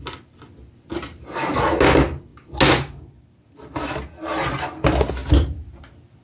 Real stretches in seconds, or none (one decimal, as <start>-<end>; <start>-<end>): 0.0-6.2